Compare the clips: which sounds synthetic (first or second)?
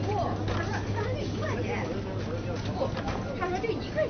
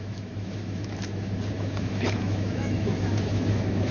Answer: second